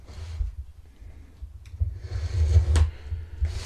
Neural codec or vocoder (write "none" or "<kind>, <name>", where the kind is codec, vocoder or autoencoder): none